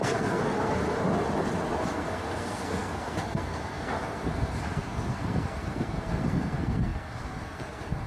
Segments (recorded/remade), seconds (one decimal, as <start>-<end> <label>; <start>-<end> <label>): 0.0-1.0 remade; 1.0-1.8 recorded; 1.8-8.1 remade

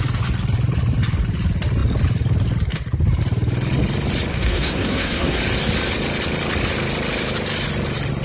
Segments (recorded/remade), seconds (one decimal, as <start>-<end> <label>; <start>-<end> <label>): 0.0-4.3 recorded; 4.3-5.4 remade; 5.4-8.2 recorded

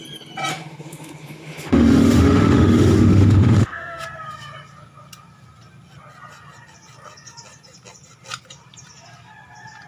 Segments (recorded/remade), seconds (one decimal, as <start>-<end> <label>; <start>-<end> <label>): 0.0-0.5 recorded; 0.5-4.0 remade; 4.0-9.9 recorded

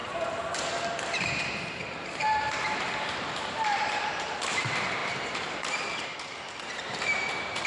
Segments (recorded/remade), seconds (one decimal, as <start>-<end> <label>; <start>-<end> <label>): 0.0-2.1 recorded; 2.1-7.7 remade

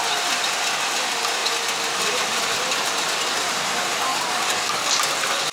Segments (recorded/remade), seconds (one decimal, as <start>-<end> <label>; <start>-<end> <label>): 0.0-4.1 recorded; 4.1-4.9 remade; 4.9-5.5 recorded

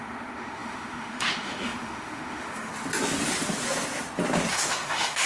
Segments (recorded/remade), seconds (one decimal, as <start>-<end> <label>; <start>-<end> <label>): 0.0-2.7 remade; 2.7-4.5 recorded; 4.5-5.3 remade

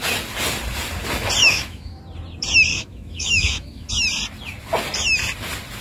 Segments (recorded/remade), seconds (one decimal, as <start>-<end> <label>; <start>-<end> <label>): 0.0-1.4 recorded; 1.4-2.0 remade; 2.0-2.7 recorded; 2.7-3.9 remade; 3.9-5.8 recorded